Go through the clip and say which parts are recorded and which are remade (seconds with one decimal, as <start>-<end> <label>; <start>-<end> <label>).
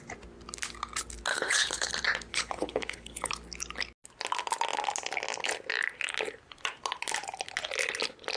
0.0-1.3 recorded; 1.3-1.9 remade; 1.9-2.3 recorded; 2.3-3.3 remade; 3.3-8.4 recorded